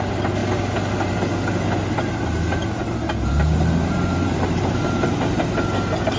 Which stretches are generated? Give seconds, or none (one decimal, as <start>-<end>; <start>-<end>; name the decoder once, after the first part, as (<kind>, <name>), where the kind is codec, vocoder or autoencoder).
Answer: 2.8-5.3 (vocoder, BigVGAN v2)